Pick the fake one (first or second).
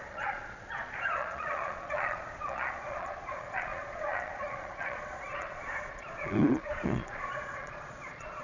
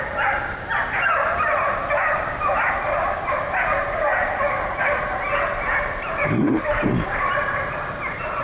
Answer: first